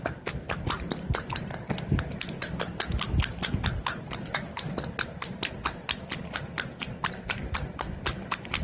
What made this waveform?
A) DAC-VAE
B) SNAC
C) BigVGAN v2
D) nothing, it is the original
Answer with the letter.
D